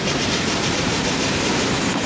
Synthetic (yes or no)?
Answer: yes